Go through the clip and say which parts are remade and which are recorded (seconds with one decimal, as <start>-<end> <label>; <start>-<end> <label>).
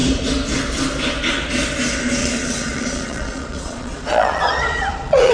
0.0-2.2 recorded; 2.2-5.3 remade